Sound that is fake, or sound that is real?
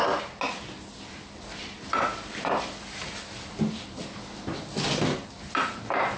real